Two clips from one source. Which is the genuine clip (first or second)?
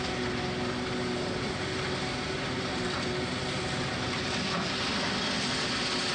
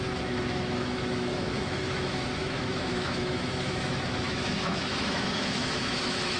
first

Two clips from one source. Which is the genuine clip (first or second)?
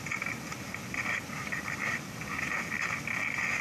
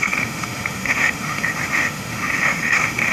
first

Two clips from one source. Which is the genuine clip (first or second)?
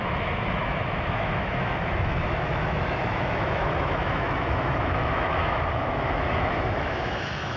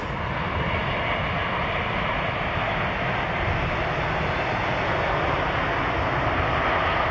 second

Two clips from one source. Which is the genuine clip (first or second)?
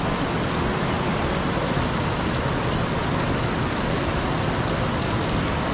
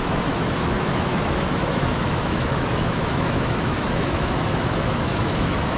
first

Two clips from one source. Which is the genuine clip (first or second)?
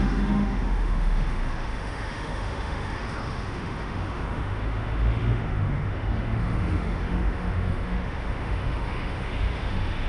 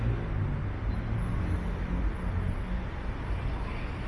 second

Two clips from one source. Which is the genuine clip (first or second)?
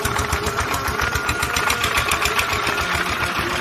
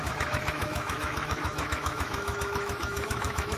first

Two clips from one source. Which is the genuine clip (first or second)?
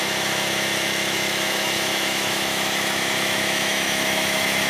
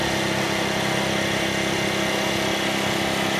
second